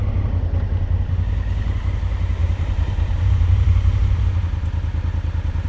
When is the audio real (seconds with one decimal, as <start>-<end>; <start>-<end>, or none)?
0.0-2.4; 4.2-5.7